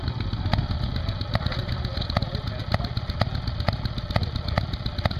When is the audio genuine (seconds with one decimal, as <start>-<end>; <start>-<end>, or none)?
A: 0.0-5.2

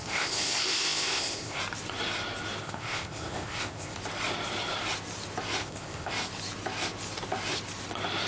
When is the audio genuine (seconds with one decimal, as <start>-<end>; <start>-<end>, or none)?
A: 1.6-2.6; 4.0-5.6; 6.1-8.3

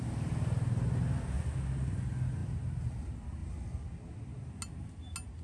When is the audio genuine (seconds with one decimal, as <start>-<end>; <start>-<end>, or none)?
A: 0.0-5.4

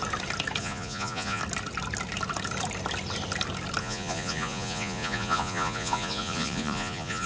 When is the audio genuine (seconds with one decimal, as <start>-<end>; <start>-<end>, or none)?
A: 0.0-0.6; 1.4-3.8